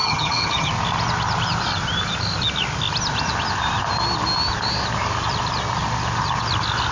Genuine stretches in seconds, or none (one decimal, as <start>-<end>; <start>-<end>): 0.7-6.9